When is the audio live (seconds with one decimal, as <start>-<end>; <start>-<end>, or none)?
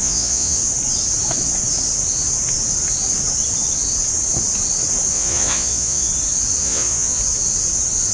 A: 0.6-5.1; 6.1-6.6; 7.2-8.1